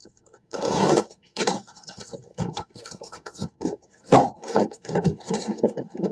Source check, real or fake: fake